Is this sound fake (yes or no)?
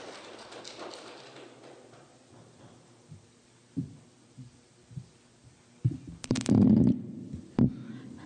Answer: yes